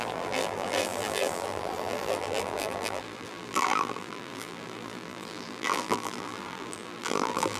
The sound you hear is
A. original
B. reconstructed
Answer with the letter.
B